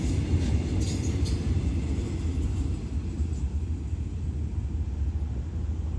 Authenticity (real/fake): real